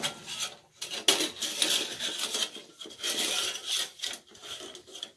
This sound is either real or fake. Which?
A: real